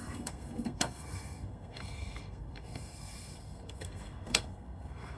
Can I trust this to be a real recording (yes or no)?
no